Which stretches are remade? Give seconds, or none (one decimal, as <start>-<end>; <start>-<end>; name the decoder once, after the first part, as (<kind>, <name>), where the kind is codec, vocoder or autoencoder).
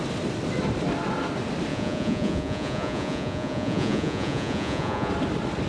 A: 1.7-5.1 (vocoder, Vocos)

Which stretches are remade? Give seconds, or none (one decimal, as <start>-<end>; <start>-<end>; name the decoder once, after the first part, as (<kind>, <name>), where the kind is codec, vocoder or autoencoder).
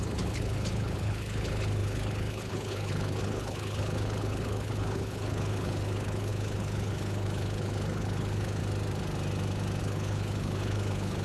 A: 0.0-8.6 (codec, HILCodec); 9.8-11.2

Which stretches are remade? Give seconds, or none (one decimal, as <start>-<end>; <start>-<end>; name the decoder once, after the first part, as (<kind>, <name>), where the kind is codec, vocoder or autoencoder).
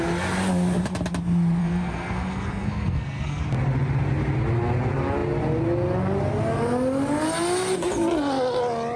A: 1.6-3.4 (codec, SNAC)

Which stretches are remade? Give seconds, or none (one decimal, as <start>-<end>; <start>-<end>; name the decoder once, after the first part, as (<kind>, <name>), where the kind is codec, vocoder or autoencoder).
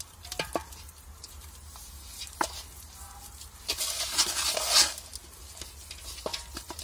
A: 0.6-2.5 (vocoder, BigVGAN v2); 6.3-6.8